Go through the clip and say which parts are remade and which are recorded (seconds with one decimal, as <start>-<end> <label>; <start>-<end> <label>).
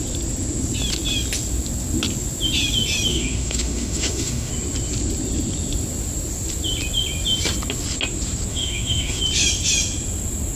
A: 0.0-3.1 recorded; 3.1-4.5 remade; 4.5-8.5 recorded; 8.5-9.2 remade; 9.2-10.6 recorded